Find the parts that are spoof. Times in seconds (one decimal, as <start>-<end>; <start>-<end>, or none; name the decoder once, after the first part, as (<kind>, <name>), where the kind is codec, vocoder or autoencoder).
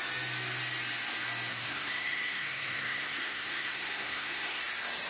1.5-4.6 (codec, SNAC)